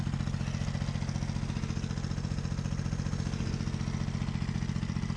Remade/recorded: recorded